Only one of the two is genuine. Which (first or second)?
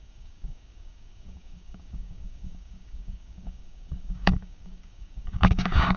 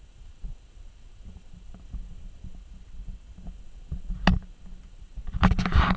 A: second